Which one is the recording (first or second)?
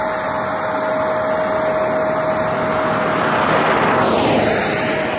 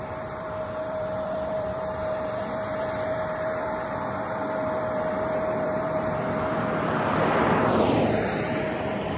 first